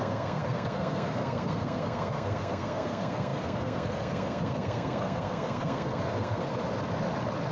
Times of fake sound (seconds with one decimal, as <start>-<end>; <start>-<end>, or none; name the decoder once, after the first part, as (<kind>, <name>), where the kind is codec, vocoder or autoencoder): 0.0-6.5 (codec, SNAC)